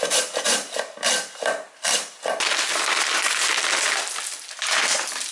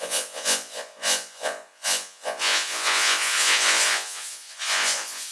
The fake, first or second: second